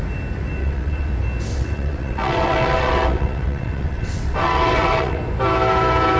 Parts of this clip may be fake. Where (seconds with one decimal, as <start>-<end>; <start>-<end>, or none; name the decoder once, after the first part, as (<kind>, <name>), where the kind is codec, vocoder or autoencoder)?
0.6-1.1 (vocoder, WaveNeXt); 1.5-5.2